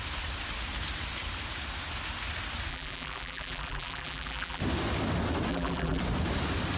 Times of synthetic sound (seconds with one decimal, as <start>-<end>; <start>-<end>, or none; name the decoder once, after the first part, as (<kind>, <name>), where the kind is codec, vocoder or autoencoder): 2.7-4.6 (vocoder, BigVGAN v2); 5.5-6.0